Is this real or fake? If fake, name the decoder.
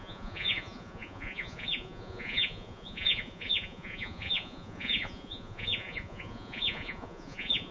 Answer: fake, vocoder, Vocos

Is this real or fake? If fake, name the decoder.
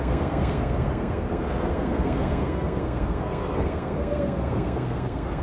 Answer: fake, codec, SNAC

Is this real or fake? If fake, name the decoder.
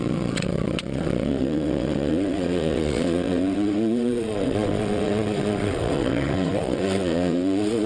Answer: fake, vocoder, WaveNeXt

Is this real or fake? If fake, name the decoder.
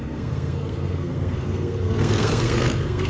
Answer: fake, codec, SNAC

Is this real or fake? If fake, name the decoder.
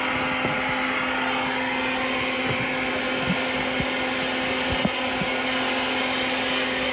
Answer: real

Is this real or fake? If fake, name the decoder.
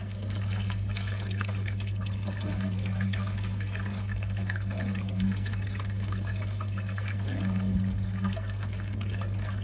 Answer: fake, codec, SNAC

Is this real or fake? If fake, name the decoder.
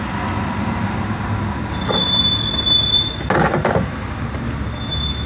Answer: real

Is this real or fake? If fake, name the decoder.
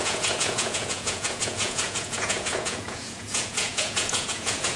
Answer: fake, vocoder, Vocos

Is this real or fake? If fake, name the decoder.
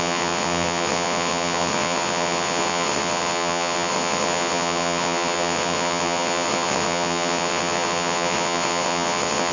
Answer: fake, vocoder, WaveNeXt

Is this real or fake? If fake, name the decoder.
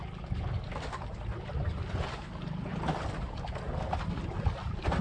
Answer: real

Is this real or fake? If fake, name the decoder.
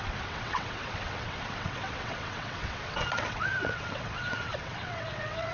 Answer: fake, vocoder, WaveNeXt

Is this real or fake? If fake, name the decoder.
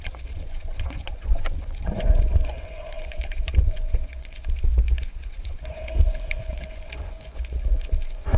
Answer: fake, vocoder, Vocos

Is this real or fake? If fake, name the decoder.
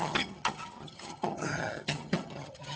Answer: fake, vocoder, HiFi-GAN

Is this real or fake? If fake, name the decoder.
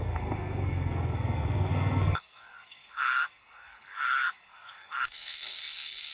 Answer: fake, codec, SNAC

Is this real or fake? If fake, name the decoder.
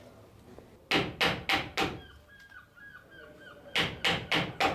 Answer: real